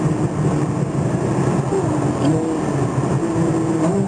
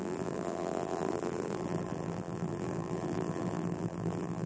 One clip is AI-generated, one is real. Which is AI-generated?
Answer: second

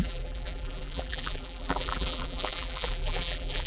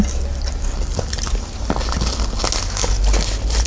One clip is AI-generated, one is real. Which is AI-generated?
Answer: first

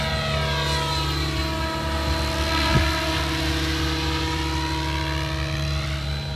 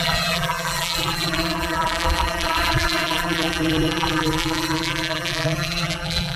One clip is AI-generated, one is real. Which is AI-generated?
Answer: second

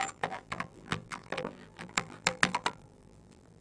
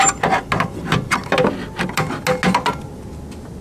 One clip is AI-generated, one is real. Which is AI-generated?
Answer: first